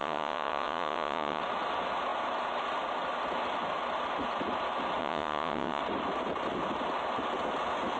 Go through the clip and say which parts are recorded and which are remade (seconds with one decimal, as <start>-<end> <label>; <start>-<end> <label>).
0.0-1.4 remade; 1.4-5.0 recorded; 5.0-5.8 remade; 5.8-8.0 recorded

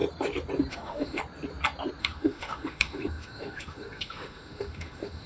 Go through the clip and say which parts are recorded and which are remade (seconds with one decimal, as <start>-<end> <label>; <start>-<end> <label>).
0.0-0.7 recorded; 0.7-1.2 remade; 1.2-2.0 recorded; 2.0-5.3 remade